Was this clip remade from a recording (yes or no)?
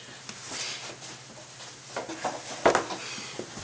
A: no